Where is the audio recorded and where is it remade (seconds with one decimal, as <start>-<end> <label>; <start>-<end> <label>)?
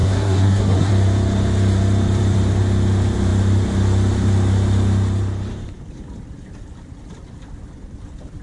0.0-0.9 remade; 0.9-8.4 recorded